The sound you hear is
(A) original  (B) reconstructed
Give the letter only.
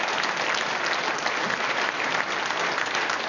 A